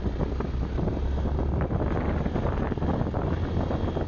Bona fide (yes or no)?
yes